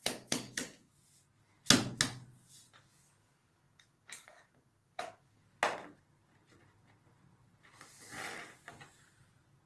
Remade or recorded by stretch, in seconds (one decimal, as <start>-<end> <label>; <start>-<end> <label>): 0.0-0.9 remade; 0.9-3.2 recorded; 3.2-5.4 remade; 5.4-9.7 recorded